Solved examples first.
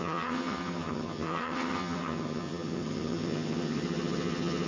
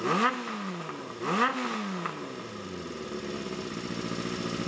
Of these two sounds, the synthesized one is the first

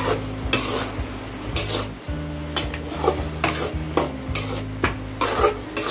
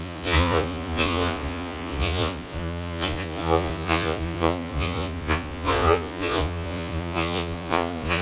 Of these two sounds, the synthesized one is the second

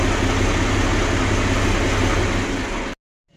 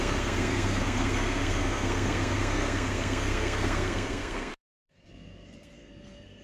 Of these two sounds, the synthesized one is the second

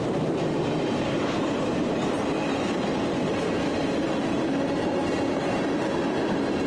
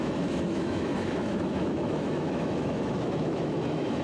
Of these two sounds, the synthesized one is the second